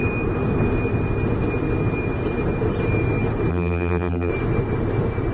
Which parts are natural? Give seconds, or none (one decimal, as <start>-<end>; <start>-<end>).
0.0-3.5; 4.3-5.3